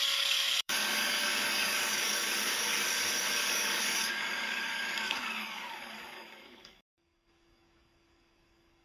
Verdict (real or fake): fake